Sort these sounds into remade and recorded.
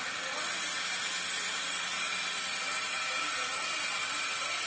recorded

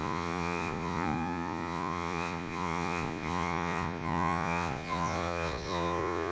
remade